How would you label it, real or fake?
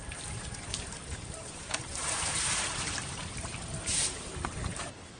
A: fake